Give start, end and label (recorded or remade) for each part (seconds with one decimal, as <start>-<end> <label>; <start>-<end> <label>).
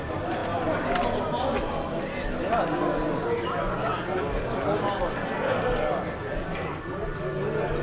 0.0-7.8 recorded